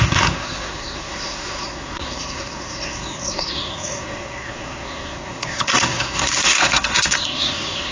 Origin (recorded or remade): remade